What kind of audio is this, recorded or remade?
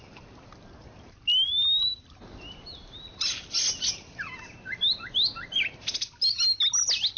recorded